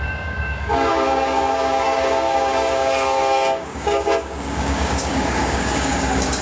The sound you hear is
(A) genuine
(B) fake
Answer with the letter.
B